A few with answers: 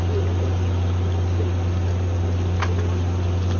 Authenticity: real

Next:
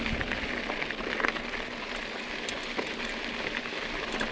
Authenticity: real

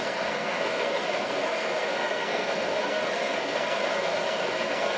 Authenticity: fake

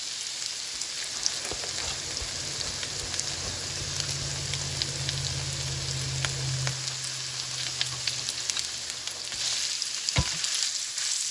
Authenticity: real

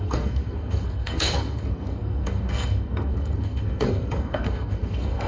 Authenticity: fake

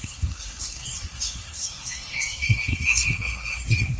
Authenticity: fake